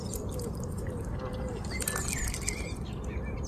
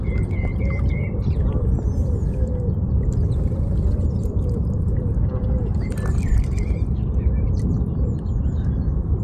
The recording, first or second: first